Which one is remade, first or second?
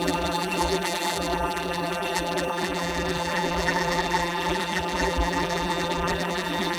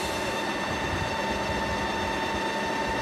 first